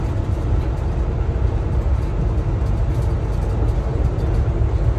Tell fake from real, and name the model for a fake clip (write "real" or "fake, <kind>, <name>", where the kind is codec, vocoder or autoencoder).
real